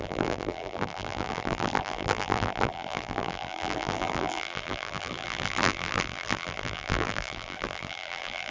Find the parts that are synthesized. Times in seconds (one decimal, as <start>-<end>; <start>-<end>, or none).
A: 0.0-8.5